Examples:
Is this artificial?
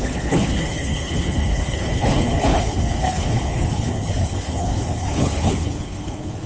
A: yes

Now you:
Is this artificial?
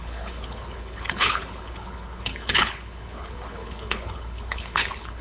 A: yes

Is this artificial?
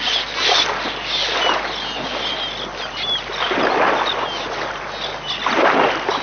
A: no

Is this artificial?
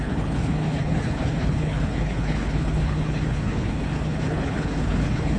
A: yes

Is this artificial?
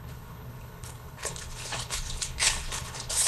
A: yes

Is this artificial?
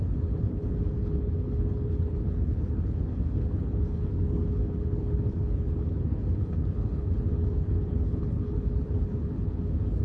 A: yes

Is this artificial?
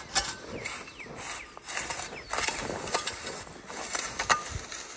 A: no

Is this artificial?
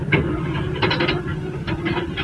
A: no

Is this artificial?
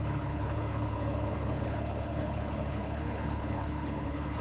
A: yes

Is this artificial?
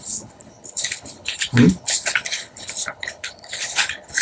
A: yes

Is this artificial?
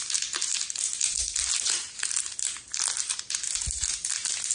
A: no